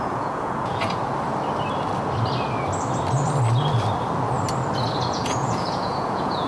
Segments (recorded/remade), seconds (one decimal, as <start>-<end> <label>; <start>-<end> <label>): 0.0-1.0 remade; 1.0-4.9 recorded; 4.9-6.5 remade